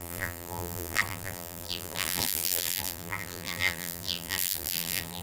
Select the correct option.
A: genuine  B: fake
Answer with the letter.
B